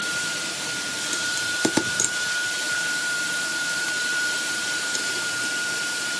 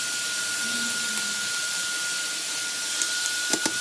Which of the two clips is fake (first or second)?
first